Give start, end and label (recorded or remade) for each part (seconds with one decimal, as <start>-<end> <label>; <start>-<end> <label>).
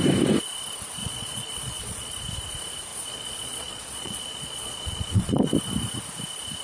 0.0-1.0 recorded; 1.0-2.1 remade; 2.1-2.9 recorded; 2.9-5.5 remade; 5.5-6.6 recorded